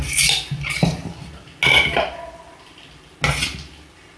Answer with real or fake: real